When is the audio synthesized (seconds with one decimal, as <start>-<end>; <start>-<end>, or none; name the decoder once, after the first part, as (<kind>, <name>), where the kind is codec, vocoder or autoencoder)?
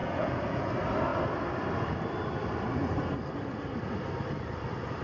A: 0.0-0.7 (vocoder, Vocos)